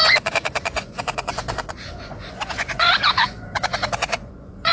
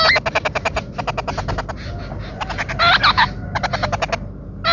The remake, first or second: first